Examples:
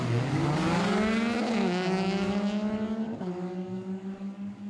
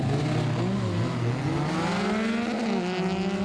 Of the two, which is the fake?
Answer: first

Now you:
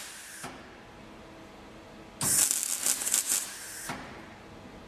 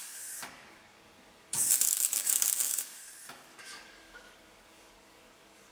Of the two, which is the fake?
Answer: second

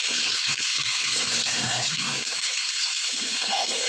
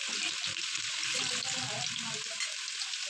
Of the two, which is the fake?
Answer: first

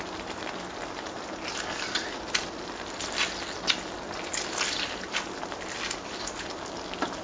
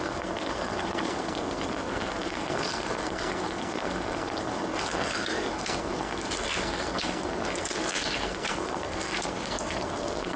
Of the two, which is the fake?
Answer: second